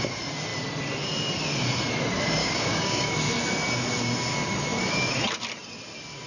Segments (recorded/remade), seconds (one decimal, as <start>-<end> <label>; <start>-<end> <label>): 0.0-2.4 recorded; 2.4-3.1 remade; 3.1-6.3 recorded